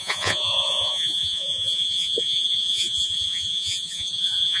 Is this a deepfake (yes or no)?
yes